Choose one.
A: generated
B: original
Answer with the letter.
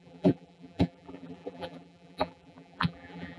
A